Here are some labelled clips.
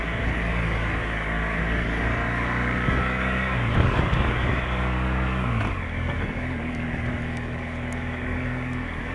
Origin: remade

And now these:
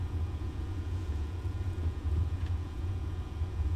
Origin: remade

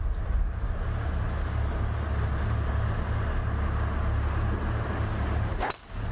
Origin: recorded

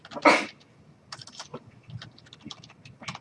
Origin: recorded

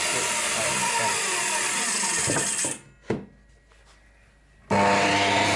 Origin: recorded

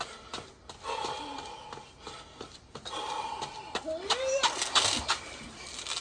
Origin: recorded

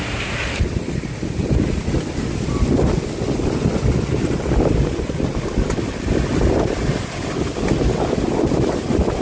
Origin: recorded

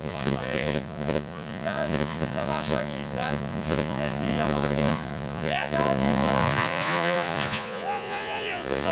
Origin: remade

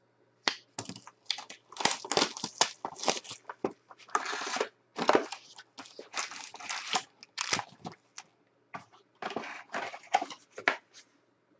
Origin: recorded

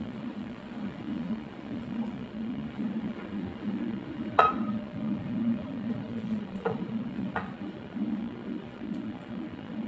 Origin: remade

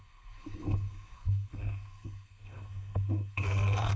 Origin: remade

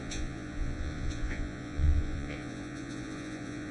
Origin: remade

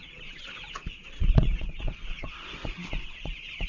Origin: remade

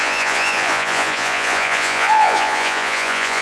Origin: remade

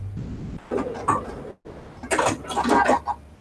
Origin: recorded